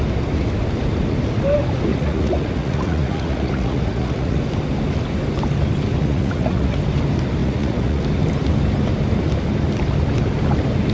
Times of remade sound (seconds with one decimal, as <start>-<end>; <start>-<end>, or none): 1.9-4.4; 6.0-6.8; 7.4-8.0